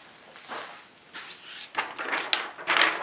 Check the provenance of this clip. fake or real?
real